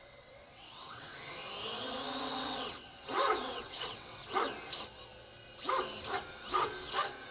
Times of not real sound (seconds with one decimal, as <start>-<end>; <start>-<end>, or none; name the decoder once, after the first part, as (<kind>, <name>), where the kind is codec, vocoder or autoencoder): 0.0-1.1 (vocoder, WaveNeXt); 2.2-4.2